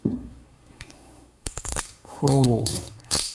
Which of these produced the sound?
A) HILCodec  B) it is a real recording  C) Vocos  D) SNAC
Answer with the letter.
D